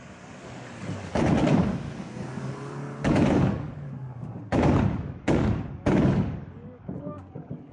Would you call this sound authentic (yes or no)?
no